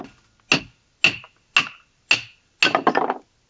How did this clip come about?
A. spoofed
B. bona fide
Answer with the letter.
B